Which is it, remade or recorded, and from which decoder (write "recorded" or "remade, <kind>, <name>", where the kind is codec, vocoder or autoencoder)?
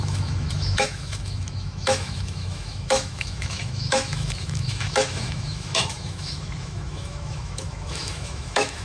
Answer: remade, autoencoder, DAC-VAE